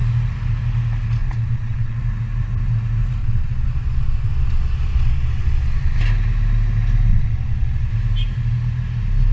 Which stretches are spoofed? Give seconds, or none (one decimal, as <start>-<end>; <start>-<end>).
1.2-2.0; 3.2-6.0; 7.1-7.9